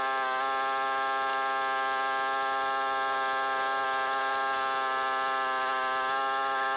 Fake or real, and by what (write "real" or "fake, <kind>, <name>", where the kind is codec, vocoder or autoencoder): real